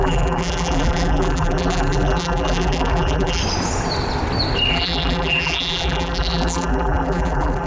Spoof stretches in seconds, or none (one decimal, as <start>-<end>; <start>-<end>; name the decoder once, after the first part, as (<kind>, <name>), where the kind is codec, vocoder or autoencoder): 0.0-3.4 (vocoder, BigVGAN v2); 4.7-7.7